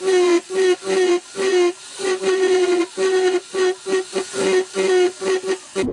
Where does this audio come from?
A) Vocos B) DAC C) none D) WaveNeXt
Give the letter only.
A